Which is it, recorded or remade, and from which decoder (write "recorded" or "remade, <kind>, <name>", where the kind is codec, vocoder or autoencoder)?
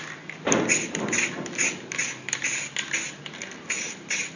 recorded